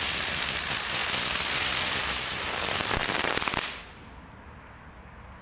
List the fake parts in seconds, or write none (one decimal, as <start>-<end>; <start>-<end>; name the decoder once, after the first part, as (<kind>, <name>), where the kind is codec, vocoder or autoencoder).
none